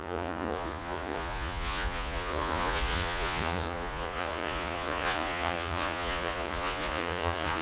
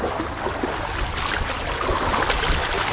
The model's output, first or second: first